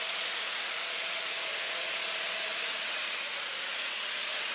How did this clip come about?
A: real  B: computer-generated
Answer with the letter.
B